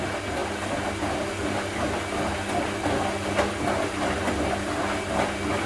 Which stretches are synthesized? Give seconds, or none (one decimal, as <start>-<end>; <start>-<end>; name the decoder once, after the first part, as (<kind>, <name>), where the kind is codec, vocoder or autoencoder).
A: none